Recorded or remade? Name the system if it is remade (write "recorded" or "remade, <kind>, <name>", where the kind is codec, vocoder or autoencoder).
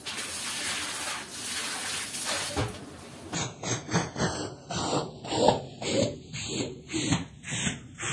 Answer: recorded